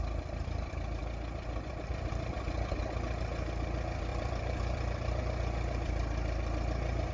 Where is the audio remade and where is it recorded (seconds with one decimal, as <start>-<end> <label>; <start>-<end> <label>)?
0.0-4.1 recorded; 4.1-5.2 remade; 5.2-7.1 recorded